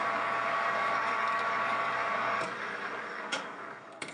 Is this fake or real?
fake